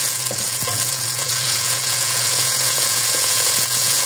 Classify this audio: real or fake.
fake